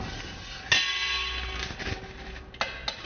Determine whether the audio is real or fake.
real